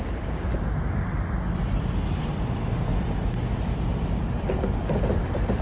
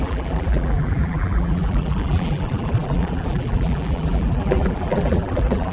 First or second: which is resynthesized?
second